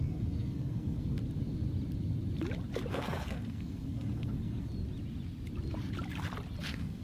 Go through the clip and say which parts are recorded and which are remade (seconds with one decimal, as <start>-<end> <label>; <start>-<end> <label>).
0.0-1.2 remade; 1.2-2.9 recorded; 2.9-4.7 remade; 4.7-6.6 recorded; 6.6-7.0 remade

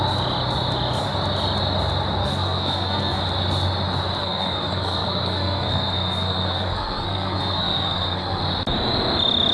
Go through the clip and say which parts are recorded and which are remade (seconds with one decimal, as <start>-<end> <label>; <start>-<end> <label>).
0.0-2.2 recorded; 2.2-3.2 remade; 3.2-4.2 recorded; 4.2-8.4 remade; 8.4-9.5 recorded

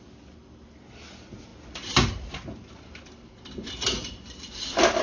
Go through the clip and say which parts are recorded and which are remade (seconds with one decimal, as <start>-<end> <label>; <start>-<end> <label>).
0.0-5.0 recorded

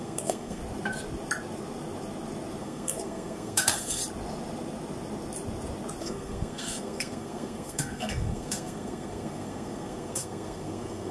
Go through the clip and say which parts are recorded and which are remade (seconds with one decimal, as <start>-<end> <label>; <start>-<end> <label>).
0.0-0.6 remade; 0.6-2.6 recorded; 2.6-4.0 remade; 4.0-6.0 recorded; 6.0-11.1 remade

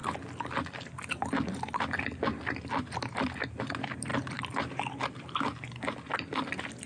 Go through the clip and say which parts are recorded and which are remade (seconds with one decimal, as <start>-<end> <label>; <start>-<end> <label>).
0.0-6.9 recorded

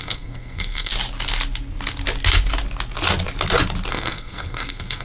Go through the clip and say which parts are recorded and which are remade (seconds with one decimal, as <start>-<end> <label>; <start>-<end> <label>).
0.0-0.9 remade; 0.9-3.9 recorded; 3.9-5.0 remade